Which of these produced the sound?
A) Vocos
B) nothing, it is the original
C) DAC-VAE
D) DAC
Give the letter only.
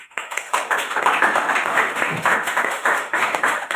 C